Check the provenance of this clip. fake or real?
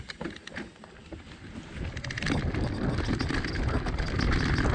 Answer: real